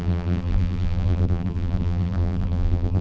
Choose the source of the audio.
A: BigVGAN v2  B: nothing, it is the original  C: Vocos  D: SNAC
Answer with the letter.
A